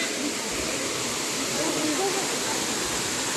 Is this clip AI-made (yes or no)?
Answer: no